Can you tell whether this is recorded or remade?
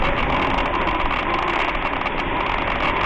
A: recorded